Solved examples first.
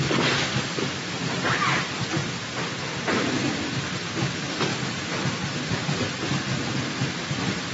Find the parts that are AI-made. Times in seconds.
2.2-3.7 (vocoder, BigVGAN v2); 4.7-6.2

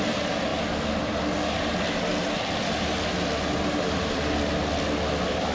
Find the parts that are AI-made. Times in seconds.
none

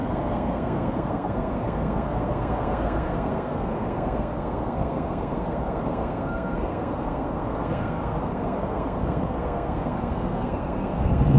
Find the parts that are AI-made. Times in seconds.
0.0-11.4 (codec, SNAC)

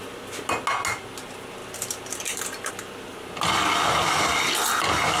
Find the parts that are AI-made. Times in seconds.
1.6-2.7 (vocoder, BigVGAN v2); 3.1-4.3

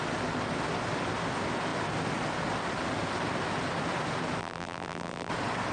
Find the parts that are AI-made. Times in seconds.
4.4-5.3 (vocoder, BigVGAN v2)